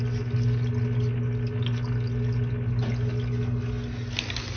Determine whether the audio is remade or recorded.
recorded